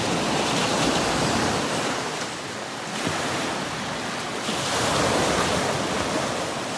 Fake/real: real